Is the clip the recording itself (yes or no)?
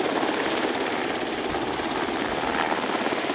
yes